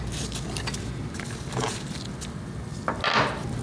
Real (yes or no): yes